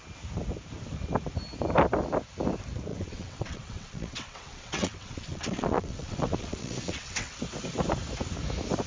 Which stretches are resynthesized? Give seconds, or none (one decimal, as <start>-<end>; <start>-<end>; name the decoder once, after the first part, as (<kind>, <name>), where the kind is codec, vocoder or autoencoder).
2.9-7.4 (vocoder, WaveNeXt)